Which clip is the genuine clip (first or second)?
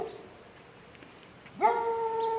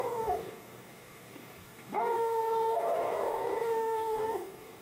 first